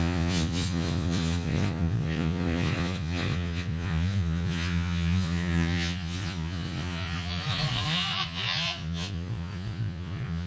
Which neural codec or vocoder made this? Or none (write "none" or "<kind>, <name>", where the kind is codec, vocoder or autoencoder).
vocoder, Vocos